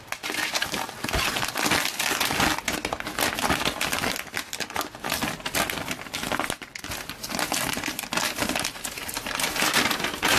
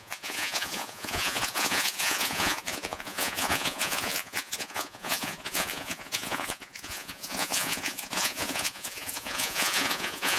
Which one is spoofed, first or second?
second